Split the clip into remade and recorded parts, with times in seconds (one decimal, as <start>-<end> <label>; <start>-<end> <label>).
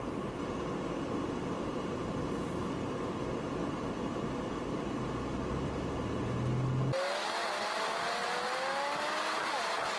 0.0-10.0 recorded